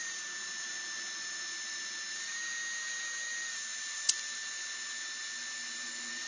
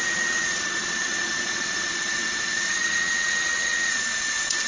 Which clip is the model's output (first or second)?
second